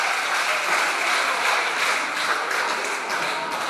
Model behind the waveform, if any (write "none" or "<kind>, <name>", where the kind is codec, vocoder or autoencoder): none